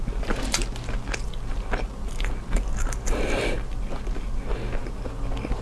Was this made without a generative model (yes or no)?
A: yes